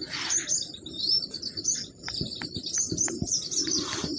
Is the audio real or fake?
real